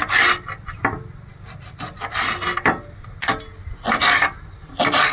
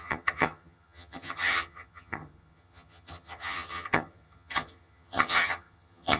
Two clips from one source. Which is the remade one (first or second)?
second